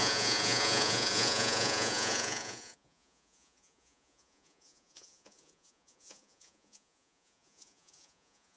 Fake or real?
fake